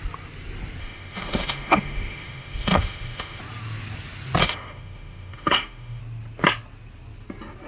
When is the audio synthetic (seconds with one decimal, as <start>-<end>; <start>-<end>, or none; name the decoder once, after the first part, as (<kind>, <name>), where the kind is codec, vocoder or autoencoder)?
0.8-3.4 (autoencoder, DAC-VAE); 4.4-6.0